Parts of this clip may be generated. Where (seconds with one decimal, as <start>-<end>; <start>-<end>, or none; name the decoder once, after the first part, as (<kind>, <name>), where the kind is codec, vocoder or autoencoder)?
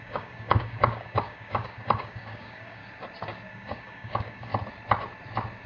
0.0-2.8 (codec, DAC); 3.5-4.5